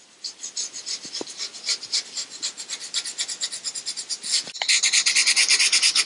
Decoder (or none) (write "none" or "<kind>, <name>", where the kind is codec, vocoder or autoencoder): none